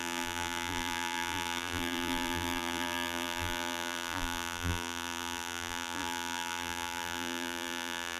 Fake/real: fake